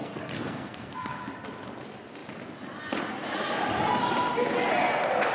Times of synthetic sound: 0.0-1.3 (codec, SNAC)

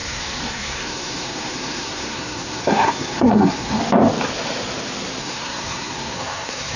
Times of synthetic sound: 0.0-3.8 (codec, SNAC); 5.2-6.8

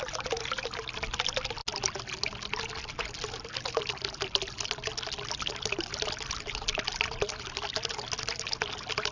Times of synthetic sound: none

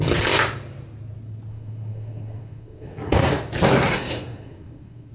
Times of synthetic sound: 1.5-3.3 (codec, SNAC); 3.9-5.1

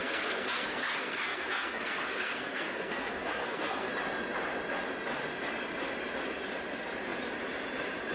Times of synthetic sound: 0.0-3.9 (codec, SNAC)